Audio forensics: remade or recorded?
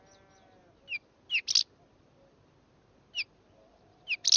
recorded